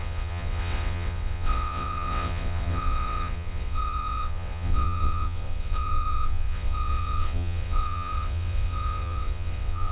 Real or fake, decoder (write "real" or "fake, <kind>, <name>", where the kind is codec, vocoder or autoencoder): fake, vocoder, WaveNeXt